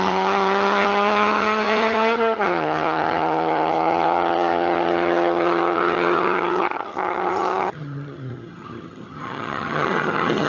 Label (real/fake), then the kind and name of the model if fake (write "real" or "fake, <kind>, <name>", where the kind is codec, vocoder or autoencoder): fake, vocoder, HiFi-GAN